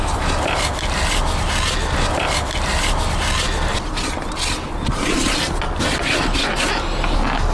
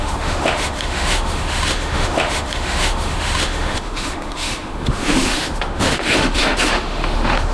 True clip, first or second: first